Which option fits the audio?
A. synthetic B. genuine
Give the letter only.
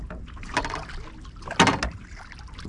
B